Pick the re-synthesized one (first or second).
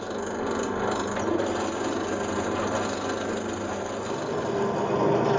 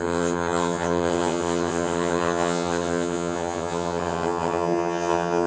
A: second